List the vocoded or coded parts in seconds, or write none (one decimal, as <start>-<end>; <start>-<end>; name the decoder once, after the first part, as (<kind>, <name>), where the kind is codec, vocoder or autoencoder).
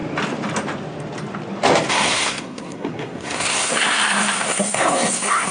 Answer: 1.9-5.5 (codec, SNAC)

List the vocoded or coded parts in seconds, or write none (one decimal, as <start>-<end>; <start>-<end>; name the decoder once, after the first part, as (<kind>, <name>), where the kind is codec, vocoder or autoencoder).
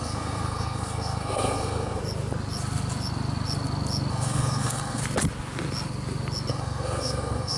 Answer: 0.0-2.0 (codec, SNAC); 4.1-5.0; 6.5-7.6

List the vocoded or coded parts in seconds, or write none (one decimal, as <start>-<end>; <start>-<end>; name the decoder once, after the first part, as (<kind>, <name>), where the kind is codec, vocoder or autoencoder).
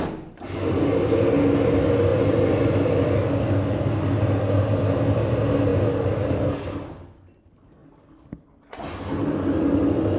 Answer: none